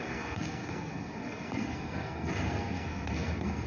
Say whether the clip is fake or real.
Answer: fake